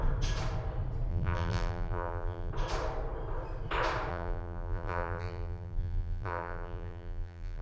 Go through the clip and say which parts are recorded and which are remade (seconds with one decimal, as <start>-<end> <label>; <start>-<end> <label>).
0.0-1.1 recorded; 1.1-2.5 remade; 2.5-4.1 recorded; 4.1-7.6 remade